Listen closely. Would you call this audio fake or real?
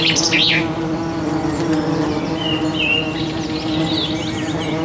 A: real